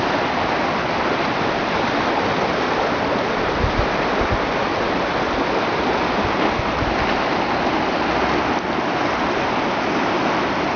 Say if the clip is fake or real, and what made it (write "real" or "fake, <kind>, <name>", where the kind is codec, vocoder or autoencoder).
real